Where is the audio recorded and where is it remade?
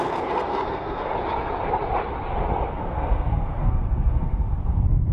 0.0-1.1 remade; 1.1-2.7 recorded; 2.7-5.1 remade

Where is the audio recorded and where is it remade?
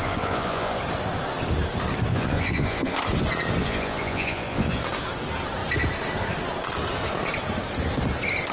0.0-0.8 remade; 0.8-2.1 recorded; 2.1-3.0 remade; 3.0-3.6 recorded; 3.6-4.8 remade; 4.8-8.5 recorded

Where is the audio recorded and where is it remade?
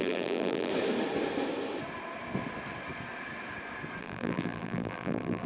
0.0-0.7 remade; 0.7-4.0 recorded; 4.0-5.5 remade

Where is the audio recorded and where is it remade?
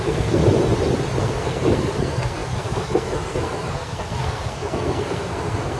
0.0-0.4 remade; 0.4-1.2 recorded; 1.2-5.8 remade